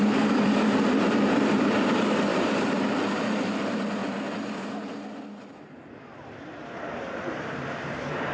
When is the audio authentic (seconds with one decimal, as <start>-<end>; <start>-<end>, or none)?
4.0-5.8